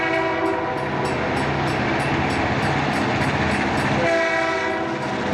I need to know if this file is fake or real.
real